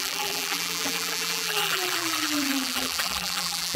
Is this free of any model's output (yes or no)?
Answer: no